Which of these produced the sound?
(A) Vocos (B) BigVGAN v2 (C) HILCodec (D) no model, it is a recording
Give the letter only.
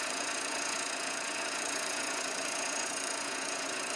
A